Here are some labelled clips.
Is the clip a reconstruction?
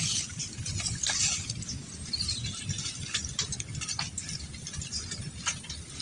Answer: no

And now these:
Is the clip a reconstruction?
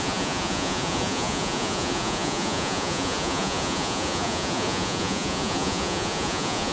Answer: yes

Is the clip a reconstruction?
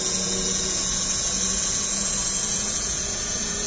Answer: yes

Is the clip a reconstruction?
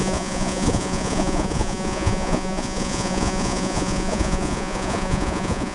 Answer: yes